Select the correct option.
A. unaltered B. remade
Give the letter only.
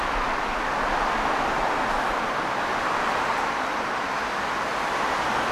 A